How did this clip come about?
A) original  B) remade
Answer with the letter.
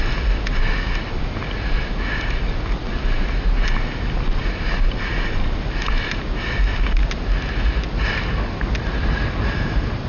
A